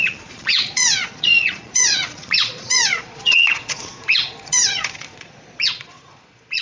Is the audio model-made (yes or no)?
yes